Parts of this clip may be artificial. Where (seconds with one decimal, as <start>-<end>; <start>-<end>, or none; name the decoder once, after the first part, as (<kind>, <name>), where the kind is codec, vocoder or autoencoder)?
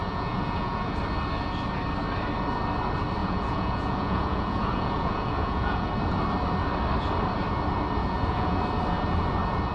0.0-1.0 (vocoder, Vocos); 3.2-5.9; 8.0-8.6